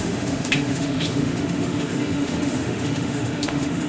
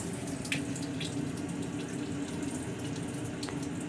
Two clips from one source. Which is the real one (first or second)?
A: second